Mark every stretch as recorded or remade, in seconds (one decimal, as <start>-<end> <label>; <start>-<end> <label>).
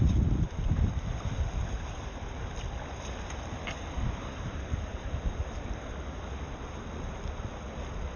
0.0-4.9 recorded; 4.9-5.5 remade; 5.5-8.2 recorded